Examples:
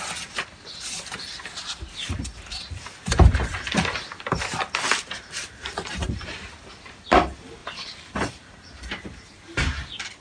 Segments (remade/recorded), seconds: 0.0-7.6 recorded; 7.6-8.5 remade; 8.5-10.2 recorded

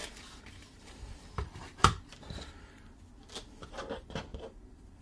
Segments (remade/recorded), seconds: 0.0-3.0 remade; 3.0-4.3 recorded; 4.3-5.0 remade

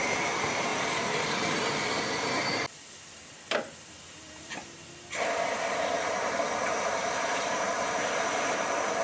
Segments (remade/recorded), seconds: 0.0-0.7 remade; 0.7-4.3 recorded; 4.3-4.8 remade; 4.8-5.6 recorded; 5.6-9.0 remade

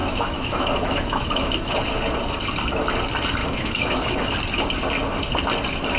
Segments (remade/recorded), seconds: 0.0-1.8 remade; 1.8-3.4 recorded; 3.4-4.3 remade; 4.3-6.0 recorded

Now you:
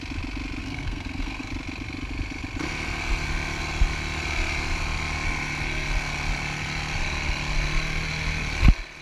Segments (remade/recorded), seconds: 0.0-0.6 recorded; 0.6-1.5 remade; 1.5-9.0 recorded

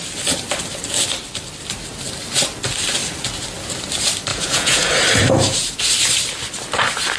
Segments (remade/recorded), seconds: 0.0-4.3 recorded; 4.3-4.9 remade; 4.9-7.2 recorded

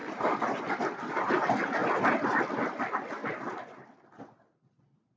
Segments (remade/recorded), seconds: 0.0-5.2 recorded

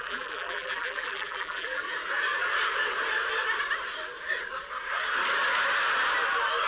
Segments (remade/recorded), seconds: 0.0-1.8 remade; 1.8-6.7 recorded